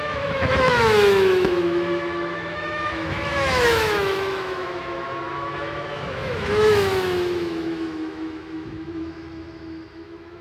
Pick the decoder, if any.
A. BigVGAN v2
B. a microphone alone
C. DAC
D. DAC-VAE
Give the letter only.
D